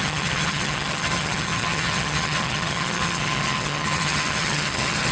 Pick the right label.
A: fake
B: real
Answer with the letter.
A